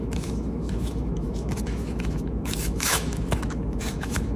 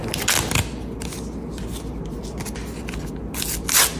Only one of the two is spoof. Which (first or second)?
first